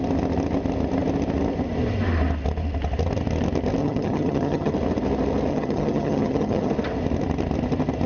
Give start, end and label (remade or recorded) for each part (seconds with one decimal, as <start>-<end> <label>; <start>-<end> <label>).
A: 0.0-3.8 recorded; 3.8-4.7 remade; 4.7-5.5 recorded; 5.5-6.7 remade; 6.7-8.1 recorded